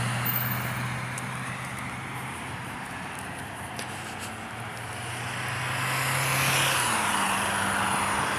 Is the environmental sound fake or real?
real